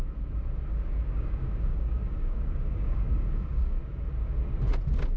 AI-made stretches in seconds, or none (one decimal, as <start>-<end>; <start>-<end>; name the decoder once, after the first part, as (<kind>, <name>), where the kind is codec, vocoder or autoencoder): 0.7-3.8 (codec, DAC)